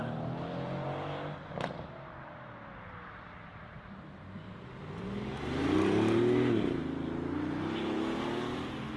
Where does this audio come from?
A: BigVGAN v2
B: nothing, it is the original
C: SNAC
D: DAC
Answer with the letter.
B